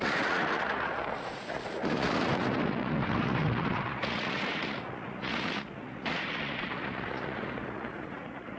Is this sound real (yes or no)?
no